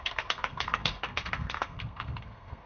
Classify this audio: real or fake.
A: fake